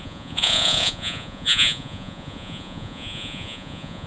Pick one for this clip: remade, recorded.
remade